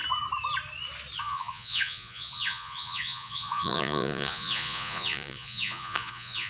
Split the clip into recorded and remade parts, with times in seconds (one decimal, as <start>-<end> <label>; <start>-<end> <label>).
0.0-1.2 recorded; 1.2-6.5 remade